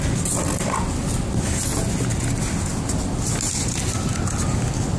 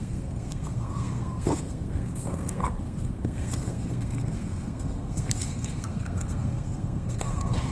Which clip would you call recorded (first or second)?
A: first